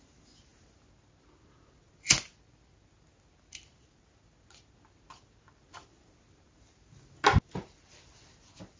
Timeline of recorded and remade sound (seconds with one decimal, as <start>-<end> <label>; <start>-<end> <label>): 0.0-8.8 recorded